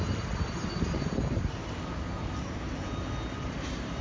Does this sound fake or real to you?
real